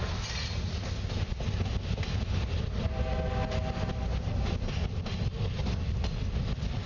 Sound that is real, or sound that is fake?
real